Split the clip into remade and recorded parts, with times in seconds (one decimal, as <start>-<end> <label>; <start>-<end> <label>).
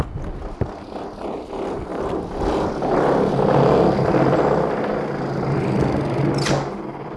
0.0-7.2 recorded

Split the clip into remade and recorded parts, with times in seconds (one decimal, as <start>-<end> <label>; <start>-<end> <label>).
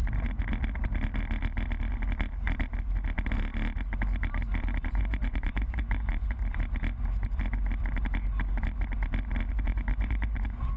0.0-4.9 recorded; 4.9-6.4 remade; 6.4-9.6 recorded; 9.6-10.8 remade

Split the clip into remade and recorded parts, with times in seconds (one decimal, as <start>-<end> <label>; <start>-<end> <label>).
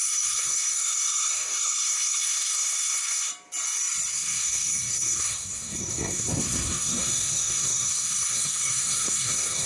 0.0-3.3 remade; 3.3-4.1 recorded; 4.1-9.7 remade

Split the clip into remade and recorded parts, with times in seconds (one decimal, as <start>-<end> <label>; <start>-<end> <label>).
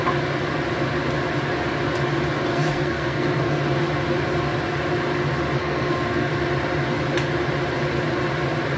0.0-2.5 recorded; 2.5-3.6 remade; 3.6-5.6 recorded; 5.6-6.3 remade; 6.3-8.8 recorded